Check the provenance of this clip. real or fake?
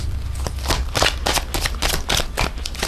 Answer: real